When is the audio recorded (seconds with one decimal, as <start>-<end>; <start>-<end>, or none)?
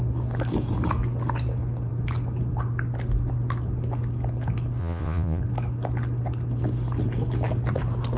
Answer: 0.0-4.8; 5.4-8.2